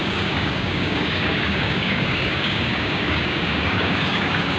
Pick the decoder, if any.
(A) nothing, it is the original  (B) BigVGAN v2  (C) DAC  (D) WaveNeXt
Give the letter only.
C